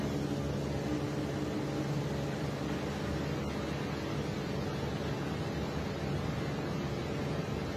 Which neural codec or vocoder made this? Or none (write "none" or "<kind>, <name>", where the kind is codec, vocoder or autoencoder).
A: none